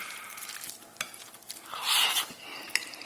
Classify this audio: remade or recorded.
remade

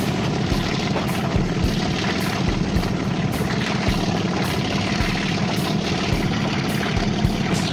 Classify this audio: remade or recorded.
recorded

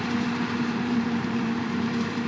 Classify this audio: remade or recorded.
remade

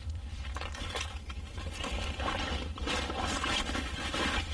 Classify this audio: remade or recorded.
remade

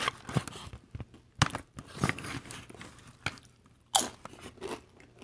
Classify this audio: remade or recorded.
recorded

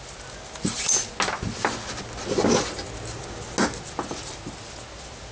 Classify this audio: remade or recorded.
recorded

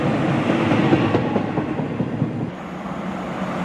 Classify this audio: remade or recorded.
recorded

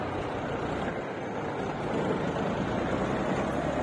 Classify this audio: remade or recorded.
recorded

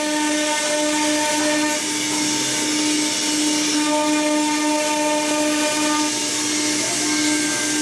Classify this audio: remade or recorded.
recorded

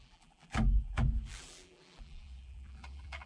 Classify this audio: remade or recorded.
remade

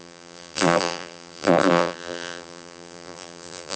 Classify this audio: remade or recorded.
remade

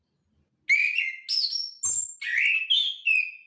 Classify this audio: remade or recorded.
recorded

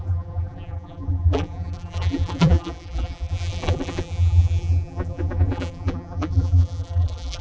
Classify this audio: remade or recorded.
remade